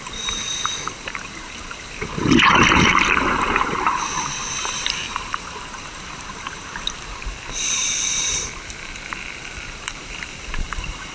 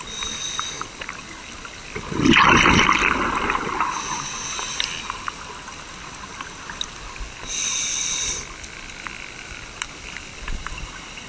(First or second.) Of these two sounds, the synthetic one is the first